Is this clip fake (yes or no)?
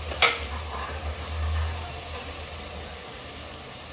no